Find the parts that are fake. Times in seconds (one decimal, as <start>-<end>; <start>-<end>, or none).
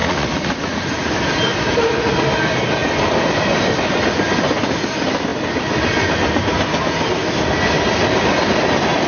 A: 0.0-1.1